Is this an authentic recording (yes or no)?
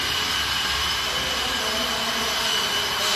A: yes